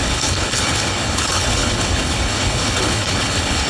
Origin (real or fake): fake